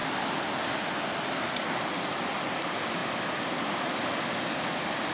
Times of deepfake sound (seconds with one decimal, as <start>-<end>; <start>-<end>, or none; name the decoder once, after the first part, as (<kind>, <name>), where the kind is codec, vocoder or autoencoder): none